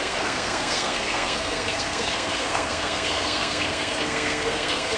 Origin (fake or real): fake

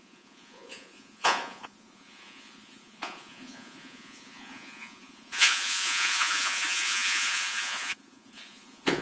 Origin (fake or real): fake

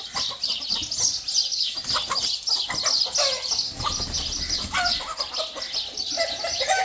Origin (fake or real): real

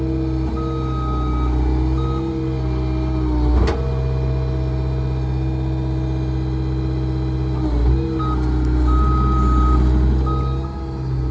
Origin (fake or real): real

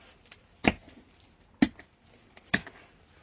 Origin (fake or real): real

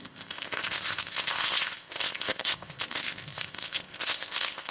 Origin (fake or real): fake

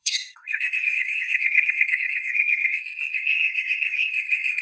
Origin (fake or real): fake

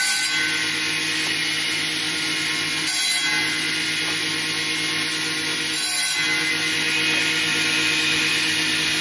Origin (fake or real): real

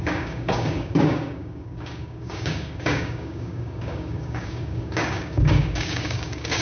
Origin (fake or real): fake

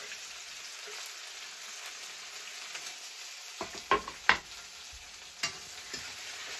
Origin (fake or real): real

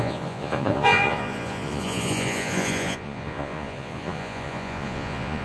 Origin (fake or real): fake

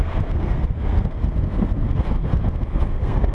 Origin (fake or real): fake